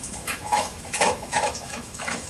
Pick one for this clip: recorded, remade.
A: remade